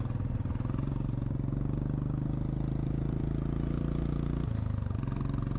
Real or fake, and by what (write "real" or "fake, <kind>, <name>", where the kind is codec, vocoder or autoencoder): real